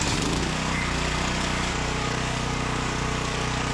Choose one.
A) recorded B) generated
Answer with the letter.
B